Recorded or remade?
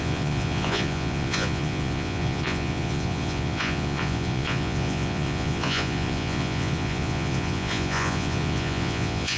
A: remade